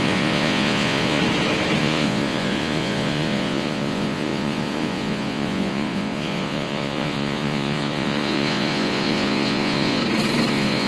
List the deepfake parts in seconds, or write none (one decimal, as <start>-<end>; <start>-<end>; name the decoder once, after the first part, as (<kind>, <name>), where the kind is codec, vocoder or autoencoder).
0.0-1.2 (vocoder, Vocos); 1.8-10.0; 10.5-10.9